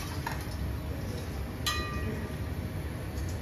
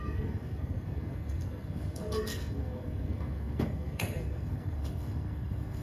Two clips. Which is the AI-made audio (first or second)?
second